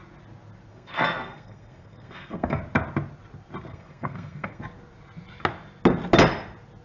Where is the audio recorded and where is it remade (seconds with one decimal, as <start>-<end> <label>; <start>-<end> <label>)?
0.0-0.7 recorded; 0.7-2.6 remade; 2.6-3.7 recorded; 3.7-4.6 remade; 4.6-6.8 recorded